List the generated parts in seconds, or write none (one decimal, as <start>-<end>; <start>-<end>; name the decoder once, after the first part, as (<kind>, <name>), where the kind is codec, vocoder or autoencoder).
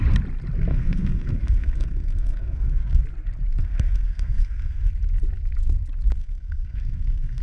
0.7-3.0 (codec, SNAC); 3.6-4.9; 6.2-7.4